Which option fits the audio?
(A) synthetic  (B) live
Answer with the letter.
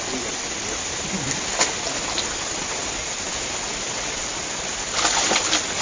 B